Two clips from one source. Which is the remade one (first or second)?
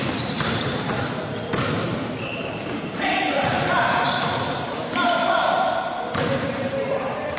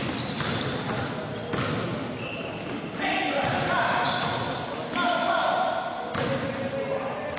first